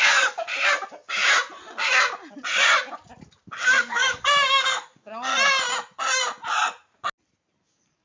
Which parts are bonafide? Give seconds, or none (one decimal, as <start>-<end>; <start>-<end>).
0.5-3.6; 5.3-7.6